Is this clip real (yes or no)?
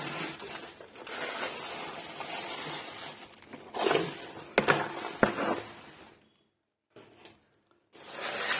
yes